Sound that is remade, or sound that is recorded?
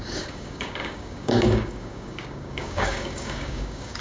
remade